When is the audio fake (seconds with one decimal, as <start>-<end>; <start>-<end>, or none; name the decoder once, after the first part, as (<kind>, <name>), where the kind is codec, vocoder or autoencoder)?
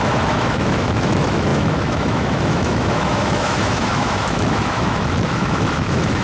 0.0-6.2 (autoencoder, DAC-VAE)